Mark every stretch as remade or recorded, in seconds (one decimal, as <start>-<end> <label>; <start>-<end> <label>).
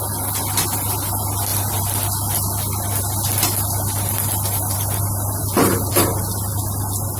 0.0-7.2 recorded